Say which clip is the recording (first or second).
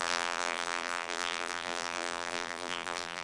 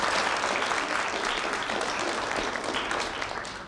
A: second